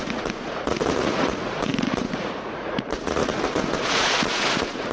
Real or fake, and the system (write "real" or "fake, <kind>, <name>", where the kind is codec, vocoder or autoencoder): fake, vocoder, Vocos